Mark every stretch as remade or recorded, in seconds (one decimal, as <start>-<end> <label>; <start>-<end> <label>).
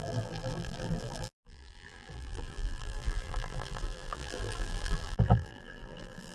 0.0-6.3 remade